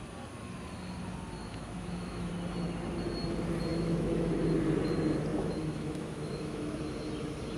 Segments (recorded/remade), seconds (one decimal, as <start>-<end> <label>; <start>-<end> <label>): 0.0-1.4 recorded; 1.4-2.3 remade; 2.3-3.7 recorded; 3.7-4.3 remade; 4.3-5.3 recorded; 5.3-6.8 remade; 6.8-7.6 recorded